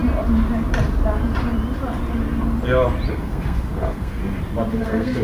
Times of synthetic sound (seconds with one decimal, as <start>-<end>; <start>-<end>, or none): 3.1-4.2; 4.8-5.2

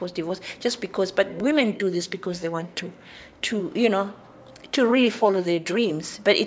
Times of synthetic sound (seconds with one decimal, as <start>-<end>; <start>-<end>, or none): 1.3-3.6; 4.9-5.9

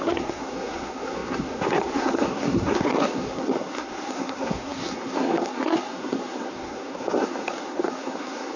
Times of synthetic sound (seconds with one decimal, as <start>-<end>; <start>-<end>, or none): 0.0-8.6